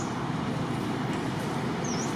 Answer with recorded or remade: recorded